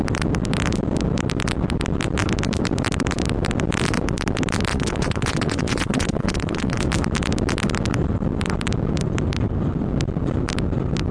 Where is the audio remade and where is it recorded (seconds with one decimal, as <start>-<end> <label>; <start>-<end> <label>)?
0.0-4.7 recorded; 4.7-6.8 remade; 6.8-11.1 recorded